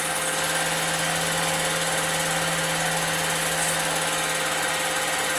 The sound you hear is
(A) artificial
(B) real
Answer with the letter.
B